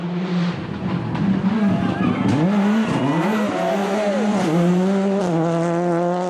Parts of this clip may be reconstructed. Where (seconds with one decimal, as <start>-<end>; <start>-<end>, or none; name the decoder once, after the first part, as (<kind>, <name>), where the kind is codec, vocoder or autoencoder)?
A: 0.0-0.8 (vocoder, BigVGAN v2); 3.8-5.2